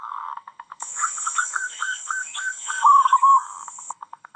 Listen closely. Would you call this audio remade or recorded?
remade